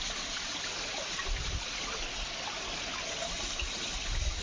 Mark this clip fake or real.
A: real